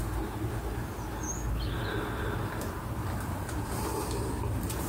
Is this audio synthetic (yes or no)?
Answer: no